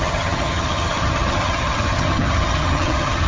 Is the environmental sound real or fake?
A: fake